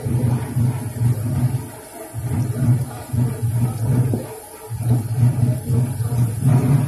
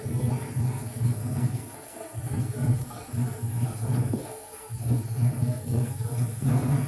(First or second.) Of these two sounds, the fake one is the second